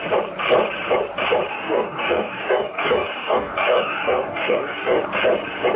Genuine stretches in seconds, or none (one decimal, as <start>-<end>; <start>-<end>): 0.0-1.5; 5.0-5.8